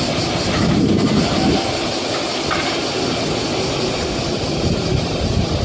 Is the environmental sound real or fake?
real